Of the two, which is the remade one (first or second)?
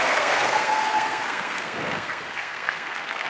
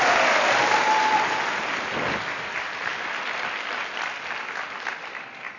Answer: first